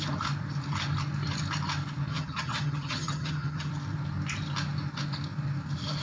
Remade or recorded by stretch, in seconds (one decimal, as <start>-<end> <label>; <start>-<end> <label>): 0.0-2.1 recorded; 2.1-3.7 remade; 3.7-6.0 recorded

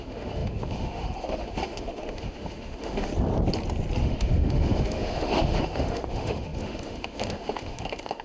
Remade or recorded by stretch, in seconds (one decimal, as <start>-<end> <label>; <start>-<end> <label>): 0.0-3.1 remade; 3.1-4.0 recorded; 4.0-8.2 remade

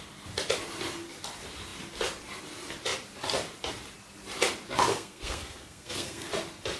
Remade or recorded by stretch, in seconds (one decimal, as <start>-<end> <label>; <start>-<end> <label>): 0.0-4.9 recorded; 4.9-6.3 remade; 6.3-6.8 recorded

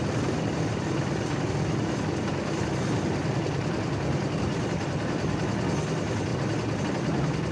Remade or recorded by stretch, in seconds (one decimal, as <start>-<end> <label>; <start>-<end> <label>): 0.0-7.5 recorded

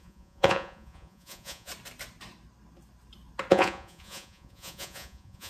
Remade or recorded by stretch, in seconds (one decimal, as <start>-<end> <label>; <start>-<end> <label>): 0.0-1.7 remade; 1.7-3.5 recorded; 3.5-5.5 remade

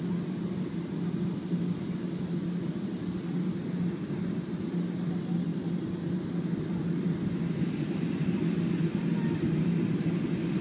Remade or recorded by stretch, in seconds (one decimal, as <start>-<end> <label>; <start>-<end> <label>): 0.0-10.6 recorded

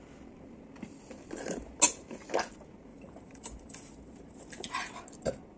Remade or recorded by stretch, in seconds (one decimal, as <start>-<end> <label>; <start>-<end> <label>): 0.0-2.9 recorded; 2.9-4.9 remade; 4.9-5.6 recorded